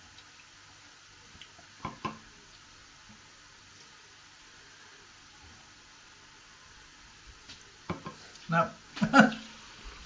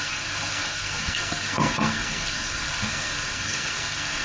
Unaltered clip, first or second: first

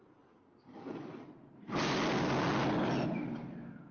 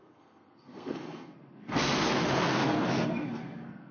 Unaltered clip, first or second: first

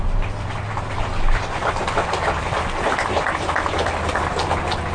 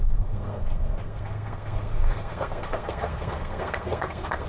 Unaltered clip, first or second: first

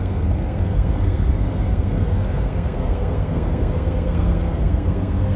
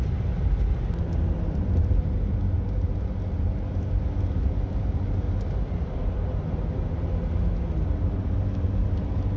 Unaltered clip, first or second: second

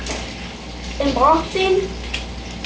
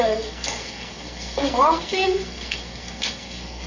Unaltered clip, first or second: first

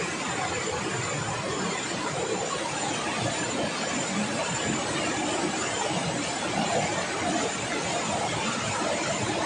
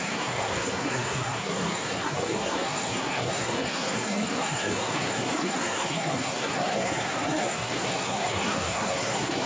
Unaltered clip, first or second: first